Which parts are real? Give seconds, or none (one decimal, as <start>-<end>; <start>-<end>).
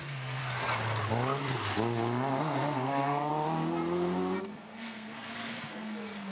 0.4-2.3; 3.3-4.4